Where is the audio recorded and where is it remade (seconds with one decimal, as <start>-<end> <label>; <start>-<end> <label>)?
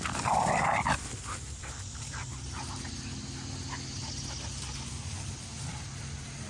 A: 0.0-2.2 remade; 2.2-5.8 recorded; 5.8-6.5 remade